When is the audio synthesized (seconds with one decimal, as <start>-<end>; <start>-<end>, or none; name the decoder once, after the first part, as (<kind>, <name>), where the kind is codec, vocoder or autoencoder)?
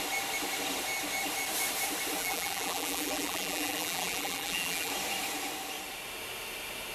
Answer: 2.2-4.9 (vocoder, BigVGAN v2)